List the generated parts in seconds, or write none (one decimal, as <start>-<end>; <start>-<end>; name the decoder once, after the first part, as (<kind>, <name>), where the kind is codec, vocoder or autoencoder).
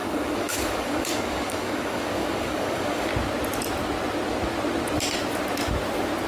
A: 0.0-3.1 (codec, DAC)